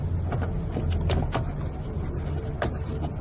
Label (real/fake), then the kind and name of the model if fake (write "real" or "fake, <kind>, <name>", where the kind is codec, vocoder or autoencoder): real